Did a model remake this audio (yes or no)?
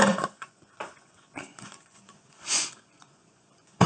yes